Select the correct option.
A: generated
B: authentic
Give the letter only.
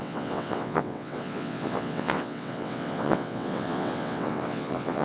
A